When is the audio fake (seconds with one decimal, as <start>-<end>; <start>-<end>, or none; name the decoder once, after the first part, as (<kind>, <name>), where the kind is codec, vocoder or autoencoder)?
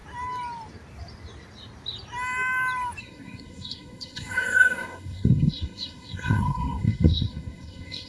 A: 3.0-8.1 (codec, SNAC)